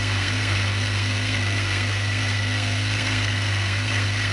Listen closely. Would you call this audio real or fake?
fake